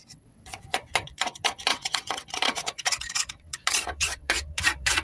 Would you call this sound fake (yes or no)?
yes